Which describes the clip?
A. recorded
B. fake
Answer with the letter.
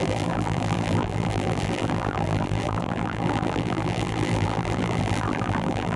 B